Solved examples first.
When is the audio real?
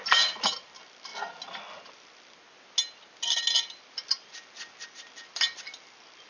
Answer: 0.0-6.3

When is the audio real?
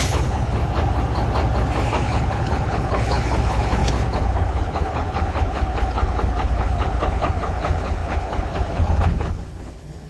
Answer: 0.6-1.9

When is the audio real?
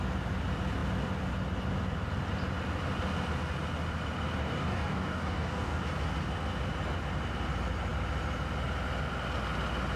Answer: 0.0-4.4; 5.8-10.0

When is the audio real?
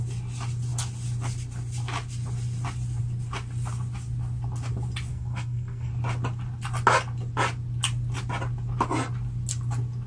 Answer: 0.0-5.1; 5.9-10.1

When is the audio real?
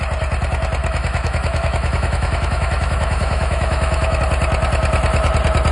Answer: 0.0-0.8; 4.2-5.7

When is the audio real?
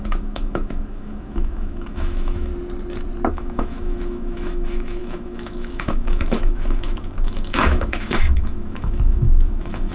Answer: 2.5-3.3